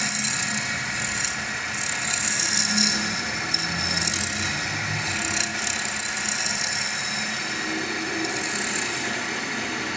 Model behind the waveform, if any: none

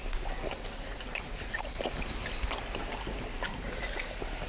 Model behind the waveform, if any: none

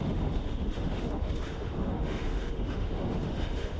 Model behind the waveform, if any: autoencoder, DAC-VAE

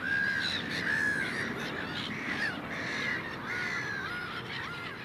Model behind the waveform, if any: none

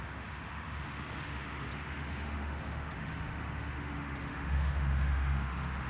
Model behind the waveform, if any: autoencoder, DAC-VAE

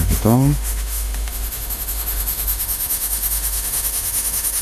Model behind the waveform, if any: autoencoder, DAC-VAE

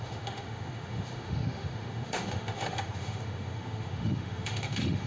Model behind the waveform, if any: autoencoder, DAC-VAE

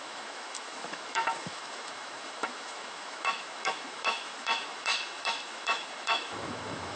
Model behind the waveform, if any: autoencoder, DAC-VAE